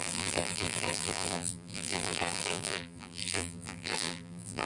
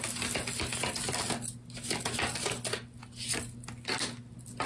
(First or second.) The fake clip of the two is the first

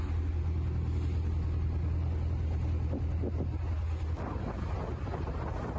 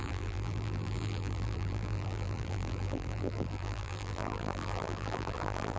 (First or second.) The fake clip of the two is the second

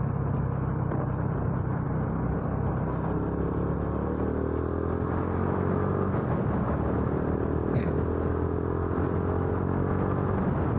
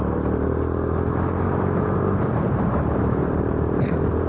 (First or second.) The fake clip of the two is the second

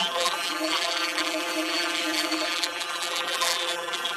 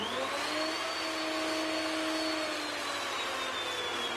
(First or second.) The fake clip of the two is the first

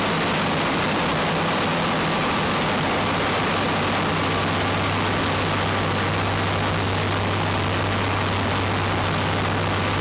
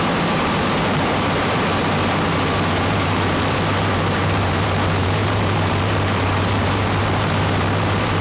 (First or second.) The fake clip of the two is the second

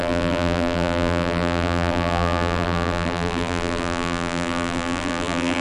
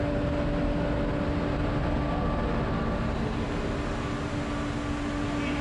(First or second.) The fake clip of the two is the first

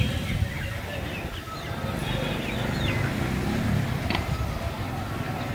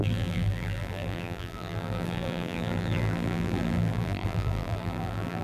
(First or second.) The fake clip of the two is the second